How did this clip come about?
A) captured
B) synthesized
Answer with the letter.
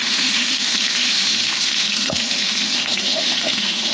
B